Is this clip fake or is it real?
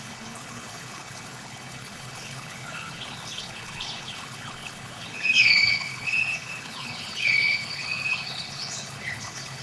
fake